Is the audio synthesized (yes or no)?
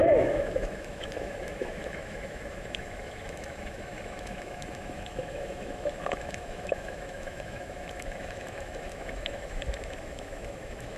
yes